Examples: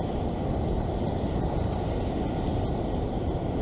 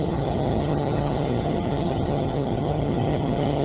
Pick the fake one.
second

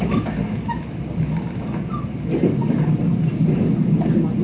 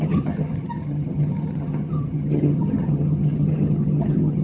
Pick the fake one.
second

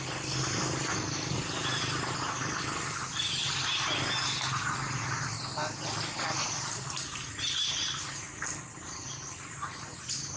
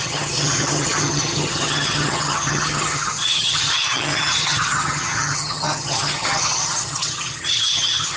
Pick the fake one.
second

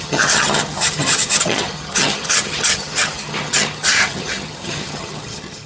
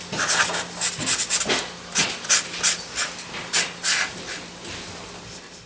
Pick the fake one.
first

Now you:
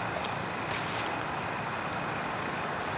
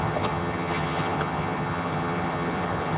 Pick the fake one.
second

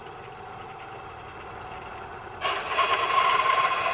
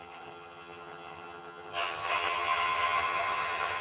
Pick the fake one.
second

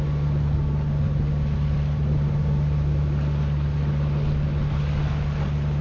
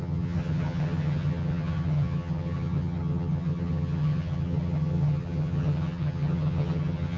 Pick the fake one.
second